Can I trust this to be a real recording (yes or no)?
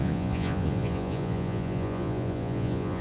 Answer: no